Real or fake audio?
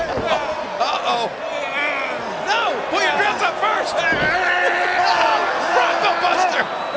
real